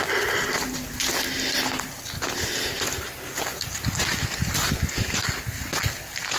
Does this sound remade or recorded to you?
recorded